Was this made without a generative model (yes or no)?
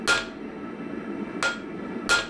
yes